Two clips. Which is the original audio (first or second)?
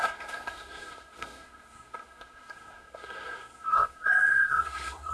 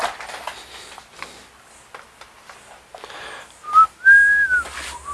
second